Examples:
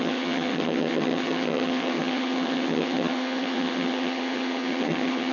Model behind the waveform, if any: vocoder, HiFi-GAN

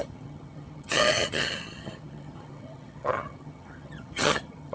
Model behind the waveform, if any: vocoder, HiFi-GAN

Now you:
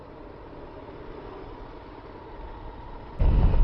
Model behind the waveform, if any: none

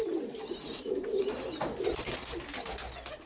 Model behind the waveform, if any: none